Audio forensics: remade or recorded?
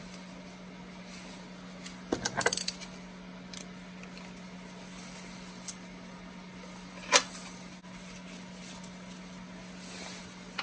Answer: recorded